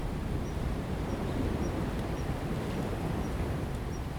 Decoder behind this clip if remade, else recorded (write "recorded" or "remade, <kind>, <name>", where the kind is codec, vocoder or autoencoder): recorded